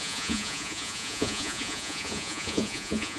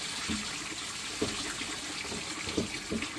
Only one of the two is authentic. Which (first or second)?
second